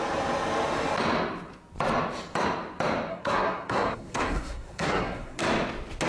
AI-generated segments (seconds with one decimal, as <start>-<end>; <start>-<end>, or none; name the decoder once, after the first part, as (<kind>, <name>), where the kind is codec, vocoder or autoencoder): 3.1-5.4 (codec, SNAC)